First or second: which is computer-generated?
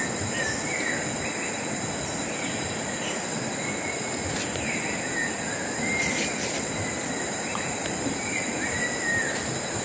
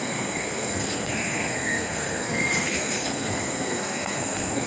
second